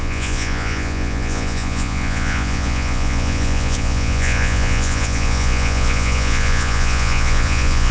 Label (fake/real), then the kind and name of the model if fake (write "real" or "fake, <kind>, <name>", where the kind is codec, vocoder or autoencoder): fake, vocoder, Vocos